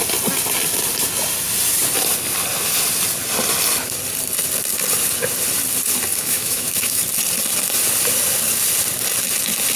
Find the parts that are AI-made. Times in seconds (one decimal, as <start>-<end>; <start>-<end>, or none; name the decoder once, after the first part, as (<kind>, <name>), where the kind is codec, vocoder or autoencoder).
6.1-7.0 (autoencoder, DAC-VAE)